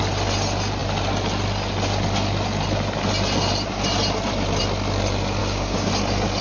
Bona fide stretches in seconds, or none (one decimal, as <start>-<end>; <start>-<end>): 0.0-5.4; 5.9-6.4